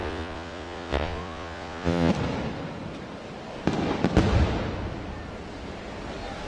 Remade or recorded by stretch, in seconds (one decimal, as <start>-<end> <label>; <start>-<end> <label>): 0.0-2.1 remade; 2.1-6.5 recorded